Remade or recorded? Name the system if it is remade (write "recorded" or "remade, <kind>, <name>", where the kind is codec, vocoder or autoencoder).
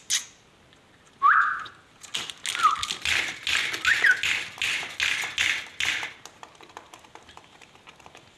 recorded